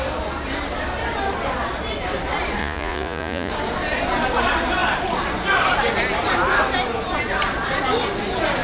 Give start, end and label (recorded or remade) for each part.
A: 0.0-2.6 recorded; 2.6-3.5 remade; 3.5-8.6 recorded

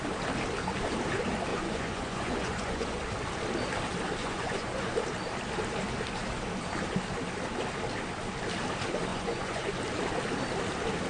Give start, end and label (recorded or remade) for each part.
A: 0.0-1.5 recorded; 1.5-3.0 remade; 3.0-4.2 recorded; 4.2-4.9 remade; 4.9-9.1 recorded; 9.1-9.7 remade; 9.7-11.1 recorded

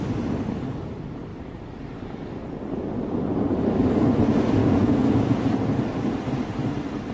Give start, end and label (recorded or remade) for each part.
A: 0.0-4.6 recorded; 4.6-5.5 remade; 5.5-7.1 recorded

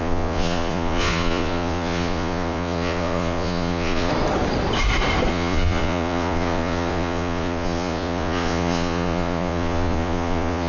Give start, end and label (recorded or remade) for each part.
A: 0.0-4.1 remade; 4.1-5.3 recorded; 5.3-10.7 remade

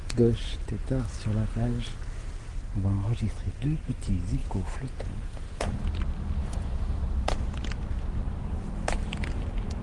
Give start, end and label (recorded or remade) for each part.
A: 0.0-4.4 recorded; 4.4-5.7 remade; 5.7-6.4 recorded; 6.4-7.0 remade; 7.0-9.8 recorded

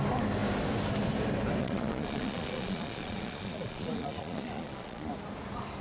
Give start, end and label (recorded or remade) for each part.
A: 0.0-1.6 recorded; 1.6-5.1 remade; 5.1-5.8 recorded

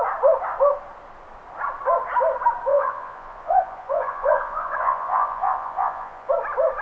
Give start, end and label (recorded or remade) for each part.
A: 0.0-2.7 recorded; 2.7-6.3 remade; 6.3-6.8 recorded

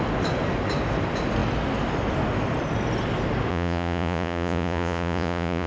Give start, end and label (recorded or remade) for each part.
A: 0.0-3.5 recorded; 3.5-5.7 remade